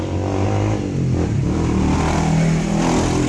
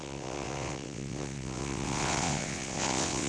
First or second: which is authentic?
first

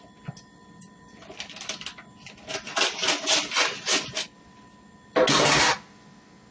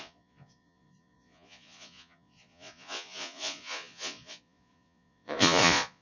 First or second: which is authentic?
first